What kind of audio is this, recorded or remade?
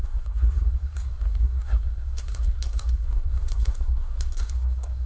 remade